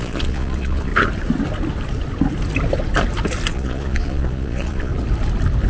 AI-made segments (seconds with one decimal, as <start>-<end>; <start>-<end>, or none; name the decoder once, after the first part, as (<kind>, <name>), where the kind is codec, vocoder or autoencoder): 0.0-0.9 (vocoder, Vocos); 3.5-4.9

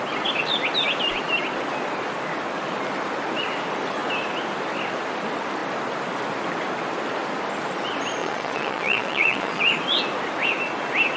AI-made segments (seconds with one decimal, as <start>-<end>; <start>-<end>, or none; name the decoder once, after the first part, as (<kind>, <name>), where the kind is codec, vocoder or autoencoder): 8.2-9.6 (vocoder, Vocos)

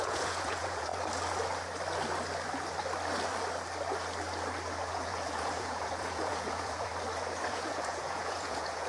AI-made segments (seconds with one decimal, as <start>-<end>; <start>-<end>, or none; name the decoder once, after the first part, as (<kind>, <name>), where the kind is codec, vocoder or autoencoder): 0.0-0.9 (vocoder, Vocos); 4.9-6.9; 7.5-8.9

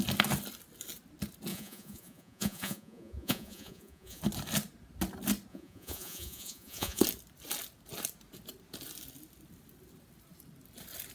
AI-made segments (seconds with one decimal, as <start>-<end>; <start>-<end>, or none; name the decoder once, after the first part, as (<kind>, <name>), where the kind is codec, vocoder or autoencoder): 1.5-4.2 (vocoder, Vocos); 5.5-7.0

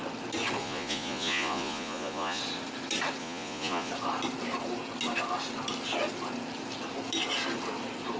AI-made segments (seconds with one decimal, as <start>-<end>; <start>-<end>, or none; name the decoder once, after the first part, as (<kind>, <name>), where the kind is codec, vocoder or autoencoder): 0.6-2.4 (vocoder, Vocos); 3.2-3.9